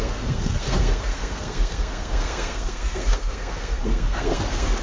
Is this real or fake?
fake